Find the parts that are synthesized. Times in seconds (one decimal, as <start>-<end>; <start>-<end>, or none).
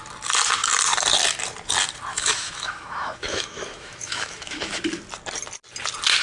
2.1-4.8